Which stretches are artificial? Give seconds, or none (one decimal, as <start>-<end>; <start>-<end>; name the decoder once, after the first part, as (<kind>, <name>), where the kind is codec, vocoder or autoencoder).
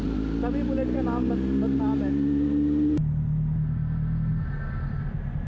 none